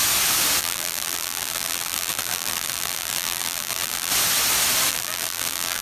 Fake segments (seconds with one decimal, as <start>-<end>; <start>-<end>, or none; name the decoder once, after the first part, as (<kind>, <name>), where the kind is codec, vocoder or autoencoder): 0.6-4.1 (vocoder, BigVGAN v2); 4.9-5.8